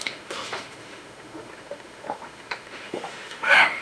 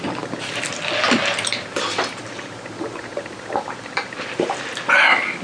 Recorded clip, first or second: second